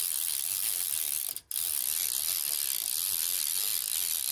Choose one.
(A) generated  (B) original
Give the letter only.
B